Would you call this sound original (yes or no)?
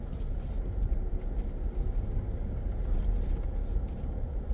yes